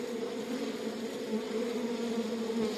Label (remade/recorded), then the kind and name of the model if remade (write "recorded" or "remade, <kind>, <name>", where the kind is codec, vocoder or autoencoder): recorded